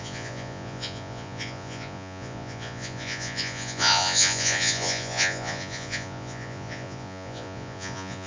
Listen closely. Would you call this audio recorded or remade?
remade